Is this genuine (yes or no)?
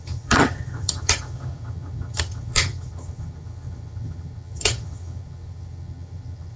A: no